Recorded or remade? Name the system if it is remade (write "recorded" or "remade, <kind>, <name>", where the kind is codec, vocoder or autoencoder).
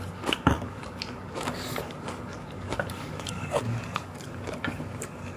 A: remade, codec, DAC